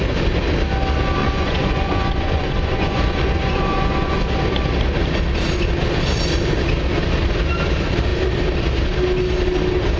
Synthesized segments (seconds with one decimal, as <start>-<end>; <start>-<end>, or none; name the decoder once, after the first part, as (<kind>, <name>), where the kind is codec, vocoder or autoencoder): 1.2-4.2 (vocoder, Vocos)